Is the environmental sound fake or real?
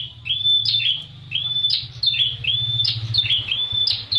real